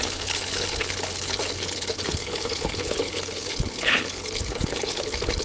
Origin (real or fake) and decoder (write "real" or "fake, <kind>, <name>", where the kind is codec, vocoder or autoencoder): fake, codec, HILCodec